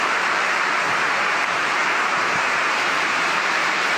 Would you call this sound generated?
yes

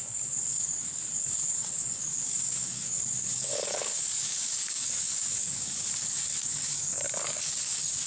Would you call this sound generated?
yes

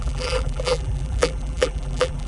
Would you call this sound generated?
yes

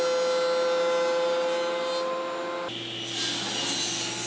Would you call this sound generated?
no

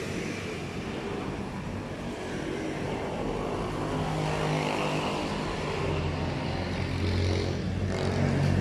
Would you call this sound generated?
no